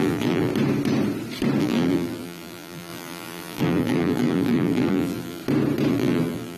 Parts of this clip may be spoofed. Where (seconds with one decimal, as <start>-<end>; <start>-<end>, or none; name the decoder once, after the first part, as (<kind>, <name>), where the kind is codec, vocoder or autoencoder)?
0.0-0.5 (vocoder, BigVGAN v2); 1.6-5.4; 5.9-6.6